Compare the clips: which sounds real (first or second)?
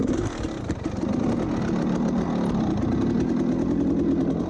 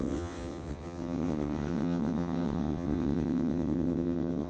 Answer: first